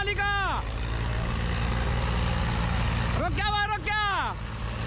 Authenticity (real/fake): real